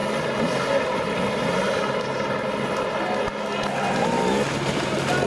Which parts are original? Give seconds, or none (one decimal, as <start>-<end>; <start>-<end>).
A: 0.0-5.3